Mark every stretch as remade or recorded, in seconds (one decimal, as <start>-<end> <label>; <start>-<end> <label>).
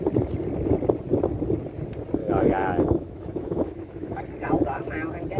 0.0-2.2 recorded; 2.2-4.2 remade; 4.2-5.4 recorded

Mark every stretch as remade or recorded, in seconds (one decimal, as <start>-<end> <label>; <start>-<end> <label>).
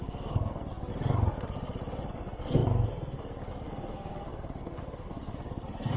0.0-0.9 remade; 0.9-2.1 recorded; 2.1-6.0 remade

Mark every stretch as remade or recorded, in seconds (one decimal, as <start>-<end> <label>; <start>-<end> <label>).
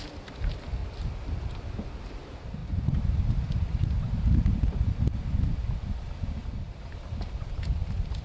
0.0-0.8 remade; 0.8-2.0 recorded; 2.0-2.6 remade; 2.6-3.5 recorded; 3.5-8.2 remade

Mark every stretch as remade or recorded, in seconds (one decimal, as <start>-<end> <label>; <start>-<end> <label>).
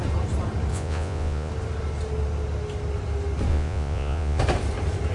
0.0-0.7 recorded; 0.7-1.5 remade; 1.5-3.5 recorded; 3.5-4.4 remade; 4.4-5.1 recorded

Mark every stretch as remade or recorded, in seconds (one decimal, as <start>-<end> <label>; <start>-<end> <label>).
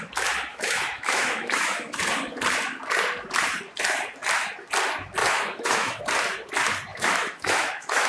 0.0-0.5 recorded; 0.5-2.0 remade; 2.0-5.2 recorded; 5.2-6.0 remade; 6.0-6.9 recorded; 6.9-8.1 remade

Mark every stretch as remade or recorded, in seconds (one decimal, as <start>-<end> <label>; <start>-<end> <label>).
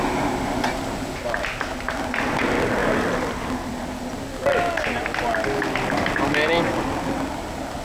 0.0-7.8 recorded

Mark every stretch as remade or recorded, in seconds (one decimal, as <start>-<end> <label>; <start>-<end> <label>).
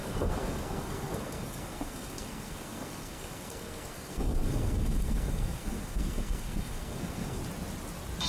0.0-7.4 remade; 7.4-8.3 recorded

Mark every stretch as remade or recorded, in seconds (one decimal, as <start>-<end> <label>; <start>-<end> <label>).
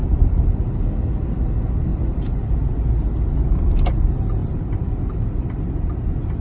0.0-0.6 remade; 0.6-1.9 recorded; 1.9-2.7 remade; 2.7-4.4 recorded; 4.4-5.0 remade; 5.0-6.4 recorded